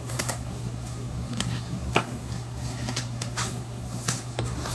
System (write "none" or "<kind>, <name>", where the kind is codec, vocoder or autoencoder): codec, SNAC